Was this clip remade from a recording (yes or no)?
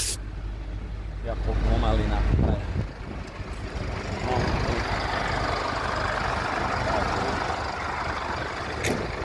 no